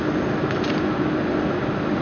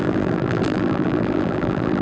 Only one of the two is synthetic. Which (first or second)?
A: second